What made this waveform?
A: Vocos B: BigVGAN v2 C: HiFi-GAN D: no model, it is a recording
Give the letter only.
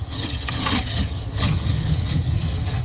C